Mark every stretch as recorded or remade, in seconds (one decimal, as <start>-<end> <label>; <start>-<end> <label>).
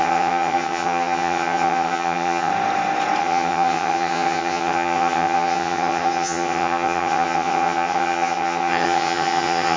0.0-2.5 remade; 2.5-3.2 recorded; 3.2-9.8 remade